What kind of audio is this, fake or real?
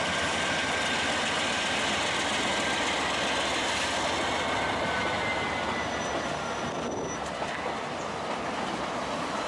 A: real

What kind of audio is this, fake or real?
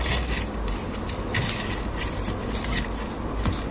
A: real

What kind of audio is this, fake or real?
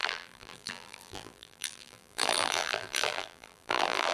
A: fake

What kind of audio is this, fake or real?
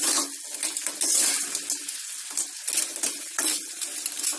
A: real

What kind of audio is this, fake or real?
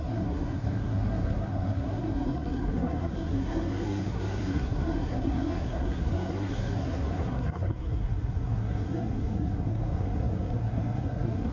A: fake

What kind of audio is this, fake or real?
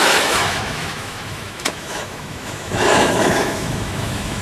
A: fake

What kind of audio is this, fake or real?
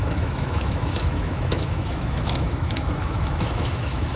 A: fake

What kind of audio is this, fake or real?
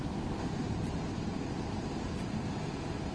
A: fake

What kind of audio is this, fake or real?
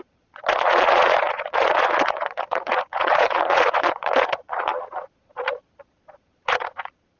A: fake